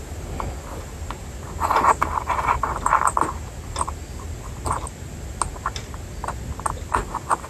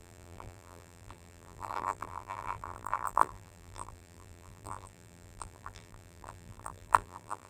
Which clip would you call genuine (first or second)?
first